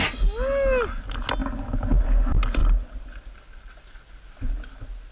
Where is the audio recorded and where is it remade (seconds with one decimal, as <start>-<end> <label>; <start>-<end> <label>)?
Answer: 0.0-5.1 recorded